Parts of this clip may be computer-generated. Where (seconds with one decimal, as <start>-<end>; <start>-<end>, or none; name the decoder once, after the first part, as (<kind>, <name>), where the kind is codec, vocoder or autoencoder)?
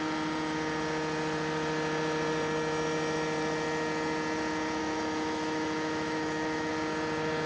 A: 4.8-6.7 (autoencoder, DAC-VAE)